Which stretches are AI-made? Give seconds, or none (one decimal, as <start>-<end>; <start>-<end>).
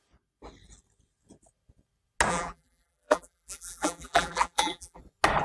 2.3-5.0